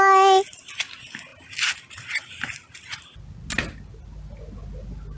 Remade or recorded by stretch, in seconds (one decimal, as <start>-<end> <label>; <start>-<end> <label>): 0.0-5.2 recorded